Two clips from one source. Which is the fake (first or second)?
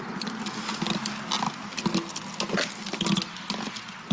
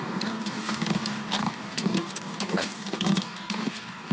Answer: second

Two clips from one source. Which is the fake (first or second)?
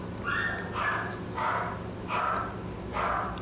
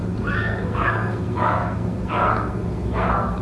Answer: second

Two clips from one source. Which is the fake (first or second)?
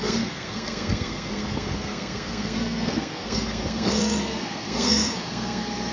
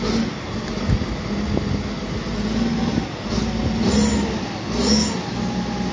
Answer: first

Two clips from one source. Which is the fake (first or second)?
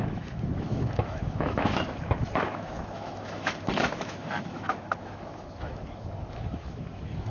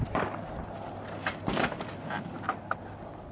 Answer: first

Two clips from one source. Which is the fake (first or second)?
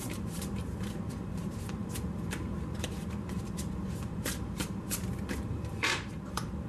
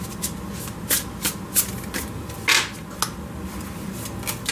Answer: first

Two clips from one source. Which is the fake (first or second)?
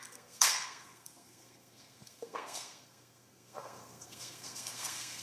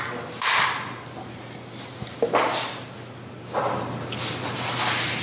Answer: first